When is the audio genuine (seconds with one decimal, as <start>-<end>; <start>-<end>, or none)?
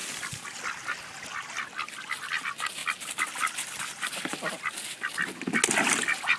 0.0-6.4